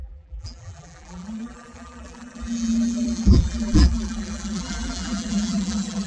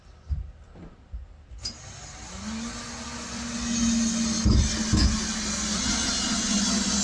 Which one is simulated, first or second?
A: first